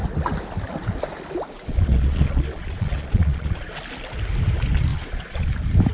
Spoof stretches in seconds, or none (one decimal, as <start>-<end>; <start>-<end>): 1.7-3.8; 4.9-5.5